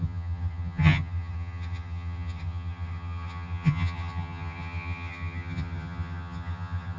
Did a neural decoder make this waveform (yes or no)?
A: yes